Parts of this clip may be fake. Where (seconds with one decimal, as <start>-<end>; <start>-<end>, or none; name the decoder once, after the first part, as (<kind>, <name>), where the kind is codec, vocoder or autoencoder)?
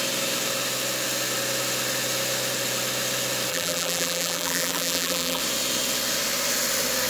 3.5-5.4 (vocoder, BigVGAN v2)